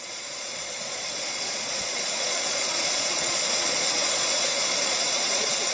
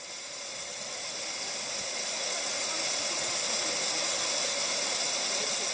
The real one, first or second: second